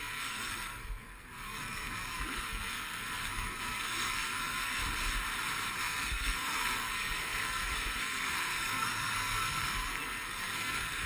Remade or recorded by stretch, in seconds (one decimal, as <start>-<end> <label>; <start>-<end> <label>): 0.0-4.8 remade; 4.8-5.8 recorded; 5.8-11.1 remade